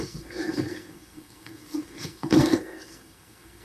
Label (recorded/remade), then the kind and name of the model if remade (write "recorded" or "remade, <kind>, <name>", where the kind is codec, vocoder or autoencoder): remade, codec, SNAC